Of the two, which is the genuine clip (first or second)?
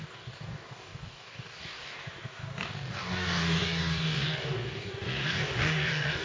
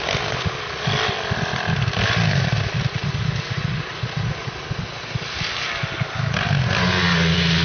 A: second